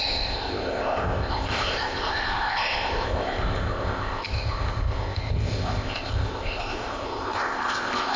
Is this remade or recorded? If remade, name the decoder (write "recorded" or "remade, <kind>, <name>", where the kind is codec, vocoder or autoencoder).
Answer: remade, codec, ZipCodec